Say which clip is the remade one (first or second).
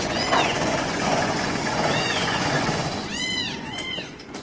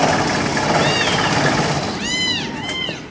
first